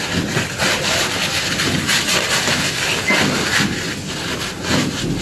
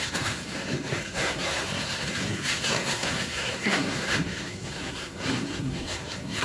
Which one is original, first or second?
first